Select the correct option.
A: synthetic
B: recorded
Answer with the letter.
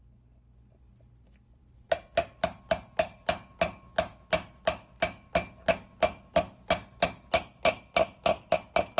B